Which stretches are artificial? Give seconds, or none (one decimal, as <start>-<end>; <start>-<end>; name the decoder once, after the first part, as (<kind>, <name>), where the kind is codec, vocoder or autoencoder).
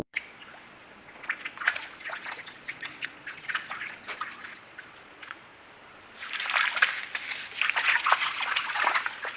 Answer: 0.0-5.5 (vocoder, Vocos); 7.8-9.4